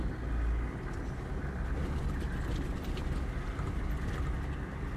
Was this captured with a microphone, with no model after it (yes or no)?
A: yes